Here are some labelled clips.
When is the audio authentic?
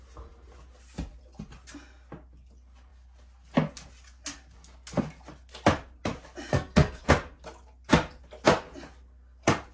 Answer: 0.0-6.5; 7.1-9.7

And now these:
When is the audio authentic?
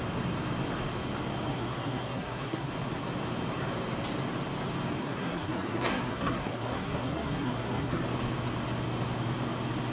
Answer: 0.0-1.5; 2.7-5.0; 8.0-9.9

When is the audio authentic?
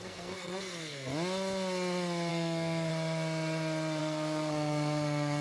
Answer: 1.1-2.3; 2.9-4.0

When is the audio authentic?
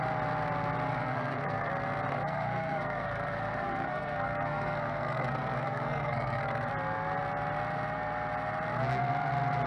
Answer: 0.0-0.9; 1.7-2.1; 6.7-9.7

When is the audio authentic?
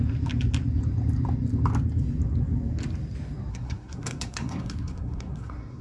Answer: 0.0-3.5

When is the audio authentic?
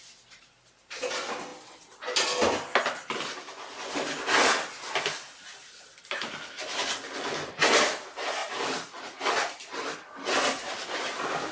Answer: 0.0-11.5